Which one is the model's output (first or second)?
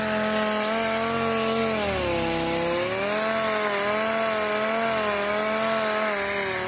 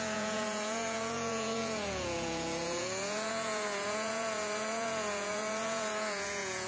second